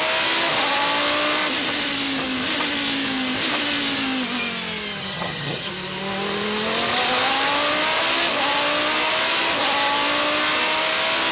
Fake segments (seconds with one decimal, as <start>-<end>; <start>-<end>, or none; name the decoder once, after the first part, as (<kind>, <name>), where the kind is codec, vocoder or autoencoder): 5.0-5.7 (vocoder, HiFi-GAN)